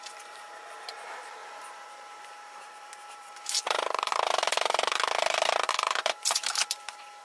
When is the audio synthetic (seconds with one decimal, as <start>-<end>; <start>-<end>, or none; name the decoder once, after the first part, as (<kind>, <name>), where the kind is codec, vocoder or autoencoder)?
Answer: 0.0-7.2 (vocoder, BigVGAN v2)